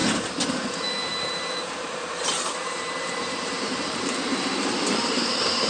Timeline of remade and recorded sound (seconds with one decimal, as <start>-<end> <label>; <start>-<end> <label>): 0.0-0.5 recorded; 0.5-5.7 remade